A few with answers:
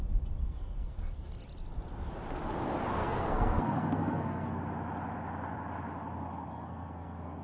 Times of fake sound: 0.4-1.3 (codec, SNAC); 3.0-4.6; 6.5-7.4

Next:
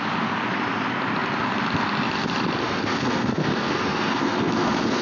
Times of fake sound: 2.6-5.0 (codec, SNAC)

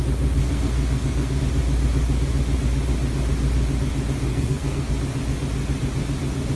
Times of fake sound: 0.4-1.4 (codec, SNAC); 4.3-4.9

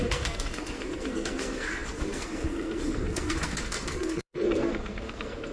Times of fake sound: 0.0-5.5 (codec, SNAC)

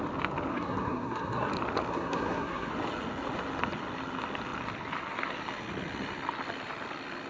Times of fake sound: 0.5-1.5 (codec, SNAC); 1.9-2.7